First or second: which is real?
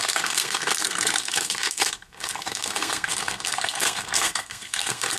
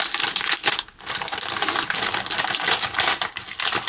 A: second